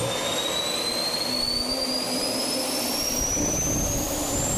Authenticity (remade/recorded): recorded